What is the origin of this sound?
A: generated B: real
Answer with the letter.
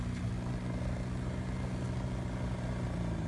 B